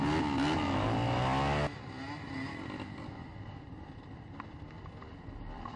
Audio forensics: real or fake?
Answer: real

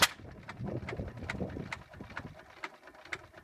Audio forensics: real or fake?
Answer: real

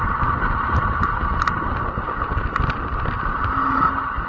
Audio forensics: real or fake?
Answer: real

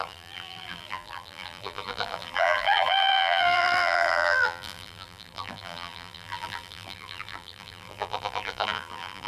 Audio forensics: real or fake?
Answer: fake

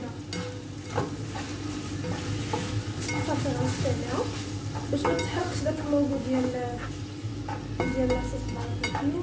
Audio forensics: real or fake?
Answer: real